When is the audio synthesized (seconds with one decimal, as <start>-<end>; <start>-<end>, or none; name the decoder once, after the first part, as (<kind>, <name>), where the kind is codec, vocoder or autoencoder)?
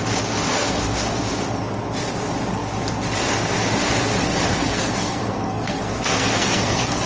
0.5-1.2 (codec, SNAC); 4.6-7.1